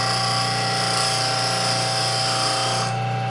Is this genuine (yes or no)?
yes